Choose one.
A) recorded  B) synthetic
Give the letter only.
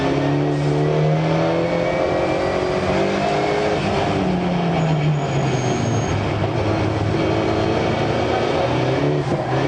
A